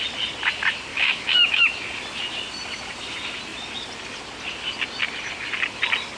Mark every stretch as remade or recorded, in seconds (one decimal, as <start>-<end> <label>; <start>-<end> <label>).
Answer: 0.0-0.9 recorded; 0.9-1.6 remade; 1.6-6.2 recorded